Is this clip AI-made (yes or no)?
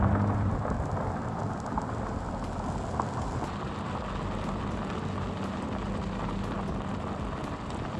no